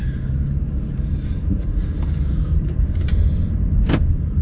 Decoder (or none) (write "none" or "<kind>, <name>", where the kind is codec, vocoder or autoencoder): vocoder, BigVGAN v2